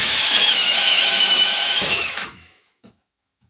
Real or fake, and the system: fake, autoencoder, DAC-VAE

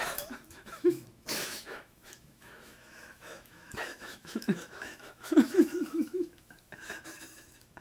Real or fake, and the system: fake, autoencoder, DAC-VAE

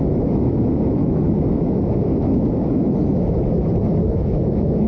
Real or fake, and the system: fake, autoencoder, DAC-VAE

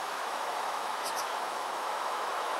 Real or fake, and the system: fake, autoencoder, DAC-VAE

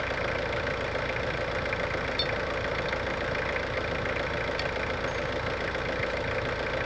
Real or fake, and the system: real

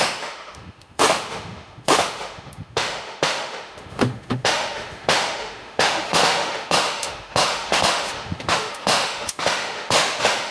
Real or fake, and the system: fake, autoencoder, DAC-VAE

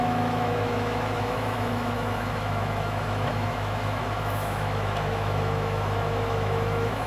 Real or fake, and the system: fake, autoencoder, DAC-VAE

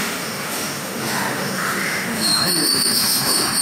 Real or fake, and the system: fake, autoencoder, DAC-VAE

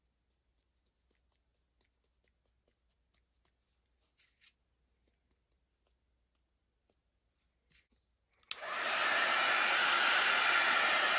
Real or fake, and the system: real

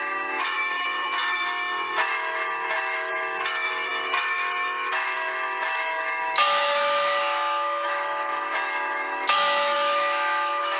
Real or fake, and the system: fake, autoencoder, DAC-VAE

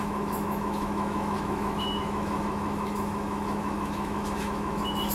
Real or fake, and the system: fake, autoencoder, DAC-VAE